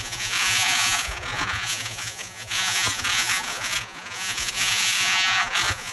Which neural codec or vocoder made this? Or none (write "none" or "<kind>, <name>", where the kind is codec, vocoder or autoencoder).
vocoder, Vocos